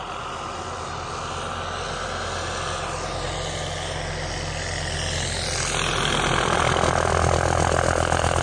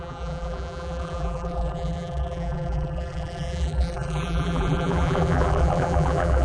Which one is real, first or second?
first